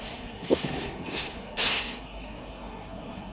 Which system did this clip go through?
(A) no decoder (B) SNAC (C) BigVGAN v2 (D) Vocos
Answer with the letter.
B